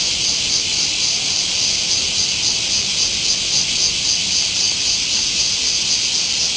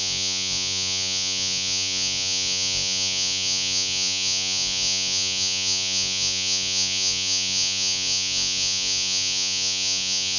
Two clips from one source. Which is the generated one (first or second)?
second